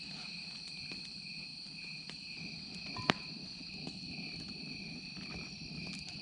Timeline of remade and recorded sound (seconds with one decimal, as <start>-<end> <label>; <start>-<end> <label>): 0.0-6.2 recorded